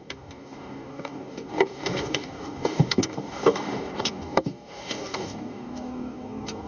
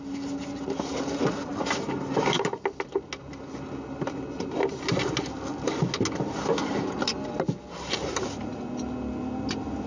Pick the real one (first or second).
second